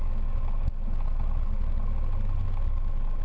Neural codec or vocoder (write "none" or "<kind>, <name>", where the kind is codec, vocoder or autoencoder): none